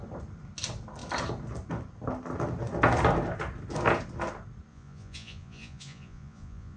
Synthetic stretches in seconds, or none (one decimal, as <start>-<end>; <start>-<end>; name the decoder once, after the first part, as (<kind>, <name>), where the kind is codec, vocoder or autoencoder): 4.7-6.8 (vocoder, Vocos)